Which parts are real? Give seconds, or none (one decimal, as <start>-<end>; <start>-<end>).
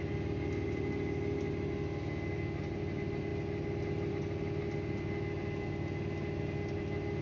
0.0-7.2